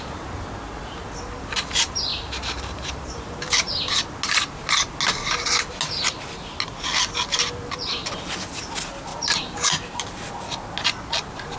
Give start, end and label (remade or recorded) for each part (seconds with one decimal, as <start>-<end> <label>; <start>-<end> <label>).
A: 0.0-2.1 recorded; 2.1-3.9 remade; 3.9-9.1 recorded; 9.1-10.3 remade; 10.3-11.6 recorded